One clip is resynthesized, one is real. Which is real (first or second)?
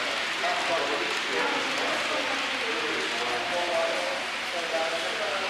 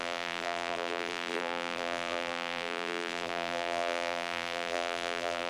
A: first